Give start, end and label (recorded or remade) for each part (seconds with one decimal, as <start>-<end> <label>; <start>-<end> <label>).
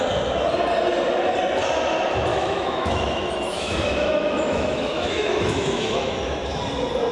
0.0-2.3 recorded; 2.3-6.6 remade; 6.6-7.1 recorded